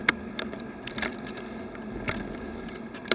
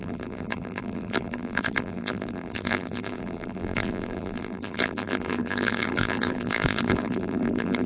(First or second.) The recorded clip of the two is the first